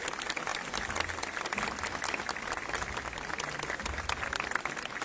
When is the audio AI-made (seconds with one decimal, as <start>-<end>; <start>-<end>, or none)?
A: none